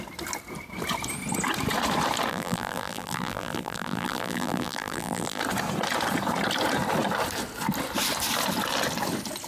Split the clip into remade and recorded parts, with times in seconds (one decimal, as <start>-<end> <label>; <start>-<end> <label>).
0.0-2.3 recorded; 2.3-5.4 remade; 5.4-9.5 recorded